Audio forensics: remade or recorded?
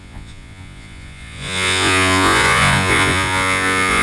remade